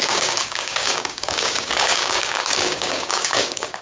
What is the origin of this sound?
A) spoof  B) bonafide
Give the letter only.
A